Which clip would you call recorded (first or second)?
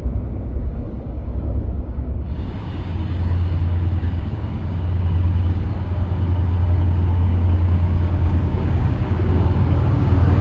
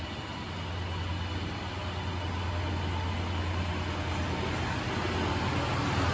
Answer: second